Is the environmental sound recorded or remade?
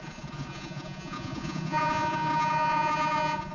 remade